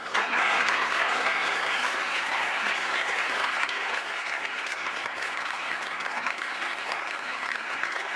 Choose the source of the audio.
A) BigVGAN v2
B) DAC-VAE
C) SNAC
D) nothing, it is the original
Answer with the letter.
C